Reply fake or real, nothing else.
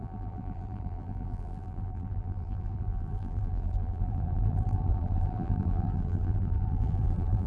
fake